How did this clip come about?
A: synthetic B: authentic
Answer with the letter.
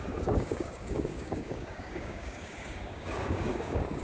A